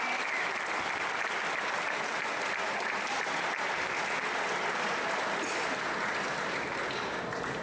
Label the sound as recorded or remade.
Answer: recorded